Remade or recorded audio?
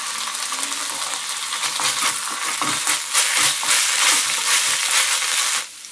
recorded